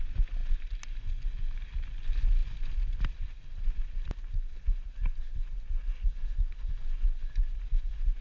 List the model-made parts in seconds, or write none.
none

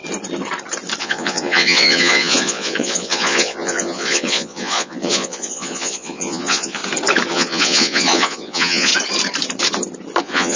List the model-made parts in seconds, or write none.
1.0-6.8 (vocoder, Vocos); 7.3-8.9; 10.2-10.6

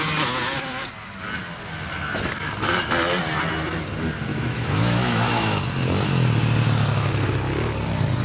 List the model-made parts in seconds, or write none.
4.3-5.6 (autoencoder, DAC-VAE)